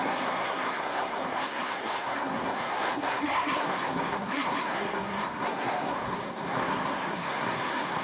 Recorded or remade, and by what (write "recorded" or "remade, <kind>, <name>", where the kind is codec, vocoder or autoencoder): remade, codec, SNAC